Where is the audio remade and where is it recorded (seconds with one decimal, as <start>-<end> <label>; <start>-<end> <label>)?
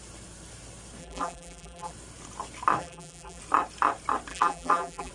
0.0-1.0 recorded; 1.0-1.9 remade; 1.9-2.8 recorded; 2.8-3.4 remade; 3.4-4.3 recorded; 4.3-5.1 remade